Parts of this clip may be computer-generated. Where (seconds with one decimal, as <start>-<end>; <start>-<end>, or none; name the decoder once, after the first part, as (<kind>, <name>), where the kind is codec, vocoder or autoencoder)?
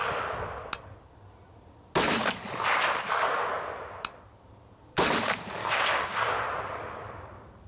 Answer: 5.6-6.3 (codec, DAC)